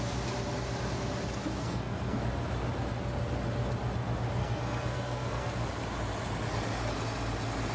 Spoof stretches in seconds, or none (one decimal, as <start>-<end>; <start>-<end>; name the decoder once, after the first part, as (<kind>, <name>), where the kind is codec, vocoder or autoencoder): 1.6-2.2 (codec, SNAC); 4.4-5.5